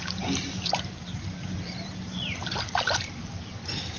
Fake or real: fake